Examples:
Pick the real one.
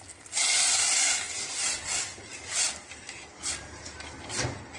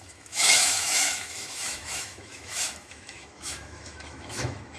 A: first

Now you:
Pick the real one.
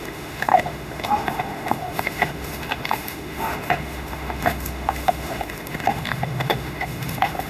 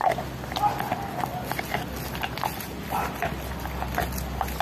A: second